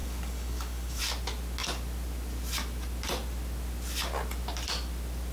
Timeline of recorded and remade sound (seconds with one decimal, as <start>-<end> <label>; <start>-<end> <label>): 0.0-1.0 remade; 1.0-5.3 recorded

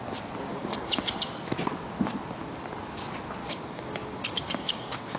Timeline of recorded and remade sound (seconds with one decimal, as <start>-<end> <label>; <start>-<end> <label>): 0.0-0.5 recorded; 0.5-1.3 remade; 1.3-3.4 recorded; 3.4-5.2 remade

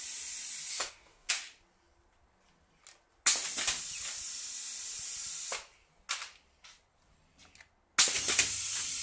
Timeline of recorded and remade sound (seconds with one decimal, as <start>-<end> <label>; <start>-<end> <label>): 0.0-0.7 recorded; 0.7-1.3 remade; 1.3-9.0 recorded

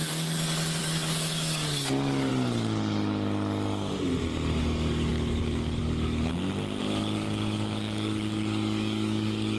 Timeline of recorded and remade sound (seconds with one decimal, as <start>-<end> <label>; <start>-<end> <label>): 0.0-0.8 recorded; 0.8-2.3 remade; 2.3-4.6 recorded; 4.6-6.3 remade; 6.3-6.8 recorded; 6.8-9.6 remade